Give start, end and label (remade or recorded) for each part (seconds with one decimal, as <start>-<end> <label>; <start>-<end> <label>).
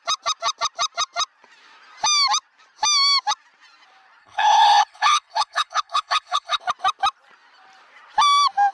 0.0-4.2 recorded; 4.2-6.6 remade; 6.6-8.7 recorded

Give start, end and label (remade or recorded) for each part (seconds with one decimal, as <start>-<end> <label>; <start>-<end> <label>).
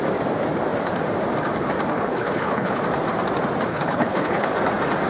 0.0-1.9 recorded; 1.9-2.8 remade; 2.8-3.7 recorded; 3.7-4.5 remade; 4.5-5.1 recorded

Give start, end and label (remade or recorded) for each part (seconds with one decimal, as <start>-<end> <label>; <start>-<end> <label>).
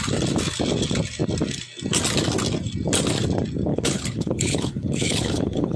0.0-3.7 recorded; 3.7-5.8 remade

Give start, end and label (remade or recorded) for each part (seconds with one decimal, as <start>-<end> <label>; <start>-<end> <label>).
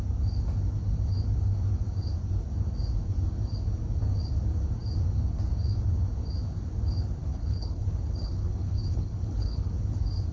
0.0-7.2 recorded; 7.2-9.7 remade; 9.7-10.3 recorded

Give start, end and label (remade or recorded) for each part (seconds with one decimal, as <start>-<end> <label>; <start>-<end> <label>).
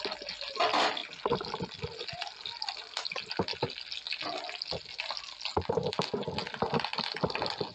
0.0-7.7 recorded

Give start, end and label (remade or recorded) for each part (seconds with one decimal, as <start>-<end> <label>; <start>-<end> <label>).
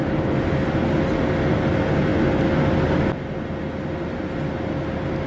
0.0-5.3 recorded